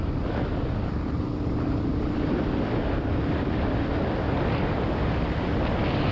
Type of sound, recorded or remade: recorded